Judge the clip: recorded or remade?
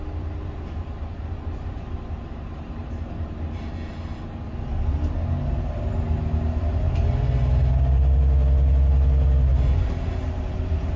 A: recorded